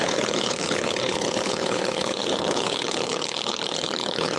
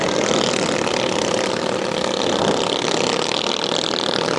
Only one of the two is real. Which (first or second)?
second